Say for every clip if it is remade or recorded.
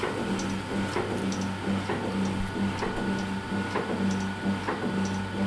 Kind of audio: recorded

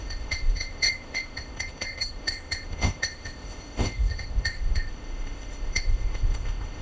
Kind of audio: remade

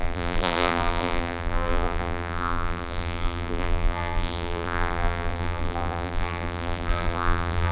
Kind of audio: remade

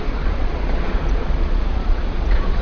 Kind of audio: remade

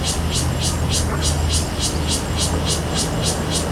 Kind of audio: recorded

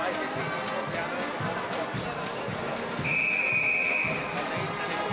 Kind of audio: recorded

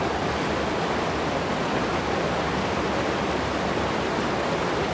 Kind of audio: recorded